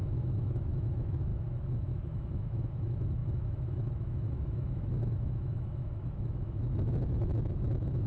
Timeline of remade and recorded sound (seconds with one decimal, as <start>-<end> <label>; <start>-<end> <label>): 0.0-8.1 remade